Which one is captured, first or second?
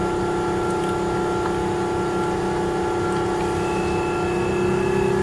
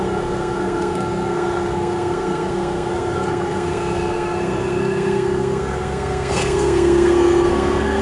first